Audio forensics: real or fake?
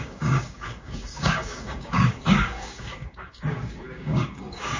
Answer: fake